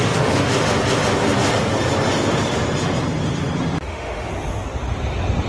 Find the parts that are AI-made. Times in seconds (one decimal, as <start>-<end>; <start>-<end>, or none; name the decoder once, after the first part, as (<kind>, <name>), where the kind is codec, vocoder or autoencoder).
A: 0.0-0.5 (autoencoder, DAC-VAE); 3.8-4.3